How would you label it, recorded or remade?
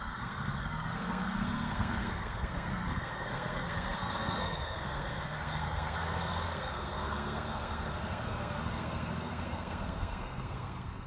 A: remade